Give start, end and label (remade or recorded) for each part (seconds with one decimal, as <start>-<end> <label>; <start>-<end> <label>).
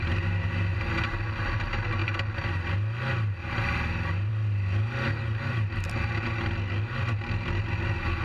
0.0-8.2 recorded